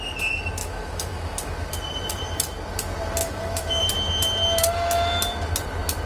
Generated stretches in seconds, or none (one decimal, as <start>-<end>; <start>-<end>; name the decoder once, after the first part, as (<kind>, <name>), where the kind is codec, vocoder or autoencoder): 0.6-1.7 (autoencoder, DAC-VAE); 3.2-3.8